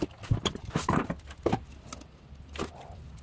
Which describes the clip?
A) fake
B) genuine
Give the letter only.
B